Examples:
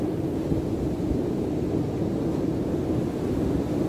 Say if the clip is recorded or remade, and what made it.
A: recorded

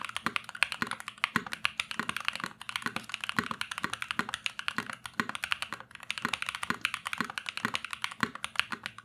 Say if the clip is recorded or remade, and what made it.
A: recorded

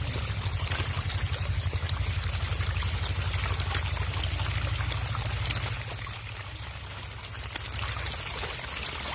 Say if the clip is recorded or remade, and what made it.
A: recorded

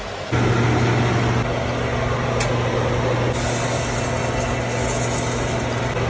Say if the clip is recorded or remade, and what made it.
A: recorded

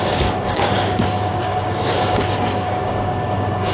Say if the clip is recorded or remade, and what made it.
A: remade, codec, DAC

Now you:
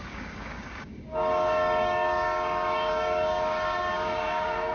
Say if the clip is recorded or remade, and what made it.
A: remade, codec, DAC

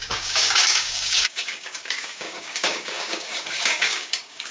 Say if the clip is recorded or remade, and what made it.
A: remade, codec, DAC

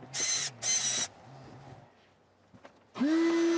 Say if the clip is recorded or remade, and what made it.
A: recorded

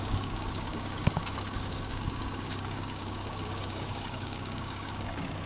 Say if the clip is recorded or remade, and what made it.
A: remade, codec, DAC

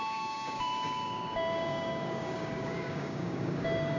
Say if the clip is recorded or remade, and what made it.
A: remade, codec, DAC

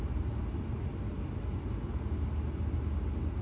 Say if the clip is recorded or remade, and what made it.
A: recorded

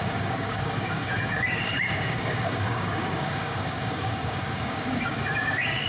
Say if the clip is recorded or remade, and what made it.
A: remade, codec, DAC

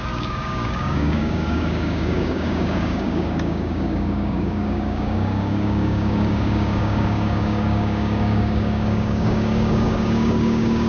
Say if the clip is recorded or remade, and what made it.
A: remade, codec, DAC